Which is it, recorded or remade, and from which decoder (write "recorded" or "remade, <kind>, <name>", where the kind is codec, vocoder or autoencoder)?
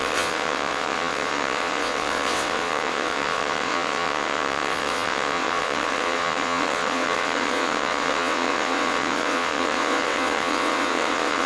remade, vocoder, WaveNeXt